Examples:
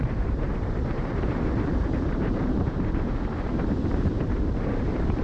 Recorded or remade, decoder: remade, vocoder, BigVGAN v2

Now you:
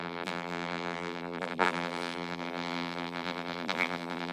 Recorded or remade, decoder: remade, vocoder, BigVGAN v2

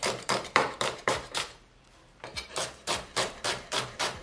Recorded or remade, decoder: remade, vocoder, BigVGAN v2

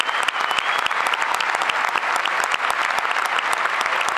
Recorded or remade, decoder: recorded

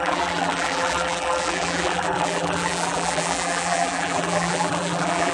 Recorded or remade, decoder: remade, vocoder, BigVGAN v2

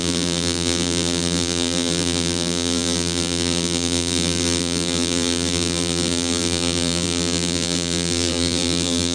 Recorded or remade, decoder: remade, vocoder, BigVGAN v2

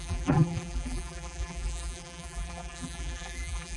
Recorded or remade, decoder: remade, vocoder, BigVGAN v2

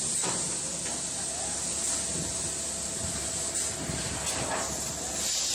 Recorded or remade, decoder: recorded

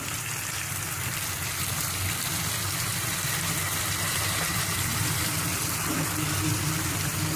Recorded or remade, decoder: remade, vocoder, BigVGAN v2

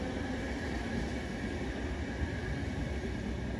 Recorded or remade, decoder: recorded